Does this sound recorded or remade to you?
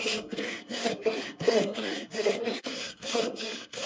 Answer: remade